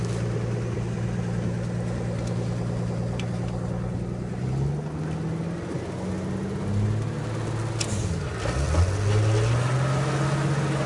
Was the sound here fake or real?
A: real